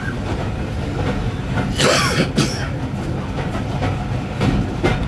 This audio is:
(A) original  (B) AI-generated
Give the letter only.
A